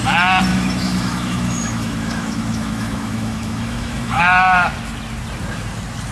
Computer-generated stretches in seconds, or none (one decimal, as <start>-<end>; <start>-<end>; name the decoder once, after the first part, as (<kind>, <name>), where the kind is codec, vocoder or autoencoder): 0.5-4.2 (autoencoder, DAC-VAE)